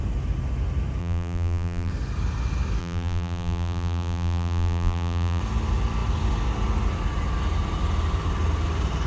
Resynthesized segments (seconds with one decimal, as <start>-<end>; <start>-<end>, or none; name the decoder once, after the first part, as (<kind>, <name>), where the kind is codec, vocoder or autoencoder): 1.0-1.9 (vocoder, BigVGAN v2); 2.8-5.4